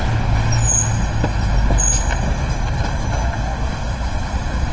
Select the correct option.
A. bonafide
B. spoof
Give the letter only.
A